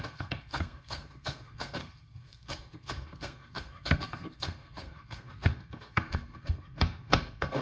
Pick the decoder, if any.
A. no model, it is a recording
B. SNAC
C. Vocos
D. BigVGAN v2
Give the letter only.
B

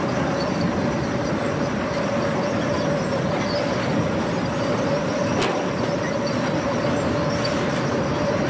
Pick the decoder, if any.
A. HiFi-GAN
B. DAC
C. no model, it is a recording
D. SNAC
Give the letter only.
C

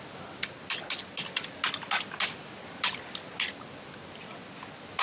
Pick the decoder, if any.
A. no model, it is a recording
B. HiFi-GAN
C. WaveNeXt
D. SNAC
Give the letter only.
A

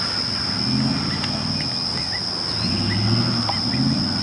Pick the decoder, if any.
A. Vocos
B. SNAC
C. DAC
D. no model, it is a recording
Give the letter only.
D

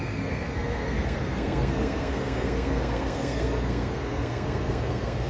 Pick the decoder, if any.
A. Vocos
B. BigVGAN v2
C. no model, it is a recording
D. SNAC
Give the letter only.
D